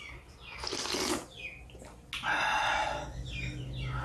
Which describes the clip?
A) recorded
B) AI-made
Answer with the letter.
A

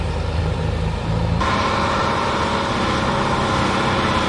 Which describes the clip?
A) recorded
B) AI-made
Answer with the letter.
A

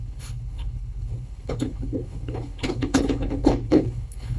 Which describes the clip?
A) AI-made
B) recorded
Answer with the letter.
A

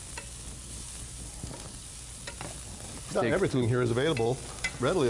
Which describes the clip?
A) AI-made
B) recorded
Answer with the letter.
B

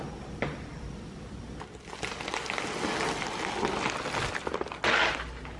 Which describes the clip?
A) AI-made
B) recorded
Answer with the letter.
B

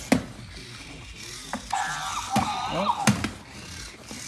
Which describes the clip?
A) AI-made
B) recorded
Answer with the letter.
B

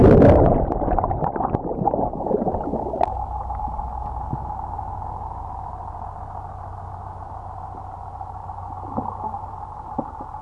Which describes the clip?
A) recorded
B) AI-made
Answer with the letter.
A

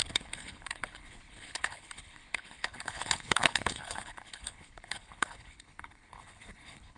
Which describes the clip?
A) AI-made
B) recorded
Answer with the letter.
A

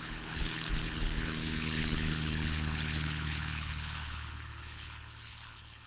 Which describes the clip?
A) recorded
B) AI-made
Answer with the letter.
B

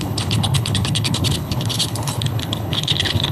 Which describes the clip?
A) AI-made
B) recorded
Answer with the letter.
A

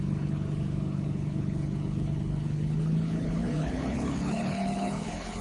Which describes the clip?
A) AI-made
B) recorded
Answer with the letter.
A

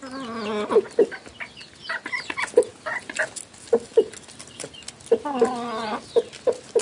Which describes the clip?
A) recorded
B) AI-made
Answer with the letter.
A